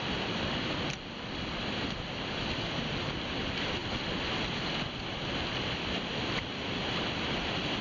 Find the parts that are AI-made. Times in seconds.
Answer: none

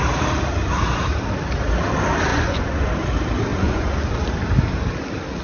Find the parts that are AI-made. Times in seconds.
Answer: 2.3-2.9 (vocoder, Vocos); 3.5-4.1

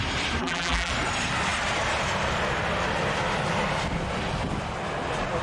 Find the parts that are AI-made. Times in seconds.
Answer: 0.4-0.9 (vocoder, BigVGAN v2)

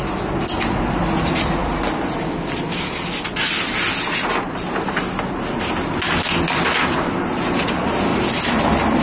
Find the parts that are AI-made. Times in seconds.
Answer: none

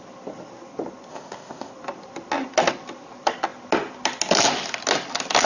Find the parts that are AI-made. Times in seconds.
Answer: 1.1-1.7 (codec, ZipCodec)

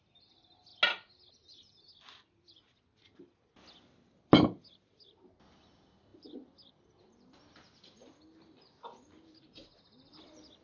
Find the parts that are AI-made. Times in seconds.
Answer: none